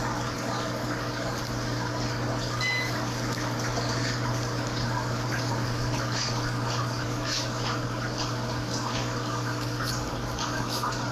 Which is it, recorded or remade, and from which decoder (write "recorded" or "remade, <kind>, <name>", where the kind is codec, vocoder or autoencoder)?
remade, codec, DAC